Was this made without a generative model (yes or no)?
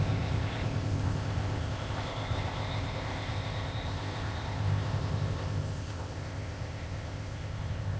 no